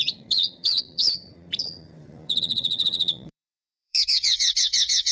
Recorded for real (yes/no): no